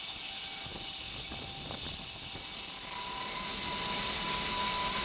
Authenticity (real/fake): real